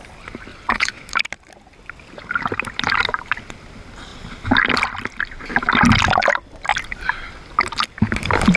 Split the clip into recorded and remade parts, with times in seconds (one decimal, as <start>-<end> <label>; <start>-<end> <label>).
0.0-0.5 recorded; 0.5-1.1 remade; 1.1-8.6 recorded